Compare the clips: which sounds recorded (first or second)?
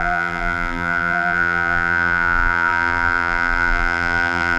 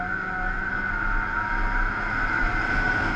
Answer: second